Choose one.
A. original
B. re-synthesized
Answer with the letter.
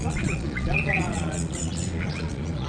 B